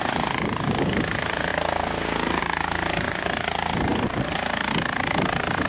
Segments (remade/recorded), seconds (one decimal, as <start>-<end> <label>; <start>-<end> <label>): 0.0-1.5 remade; 1.5-2.4 recorded; 2.4-5.7 remade